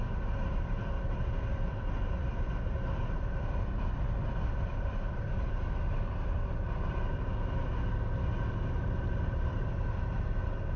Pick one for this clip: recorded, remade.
recorded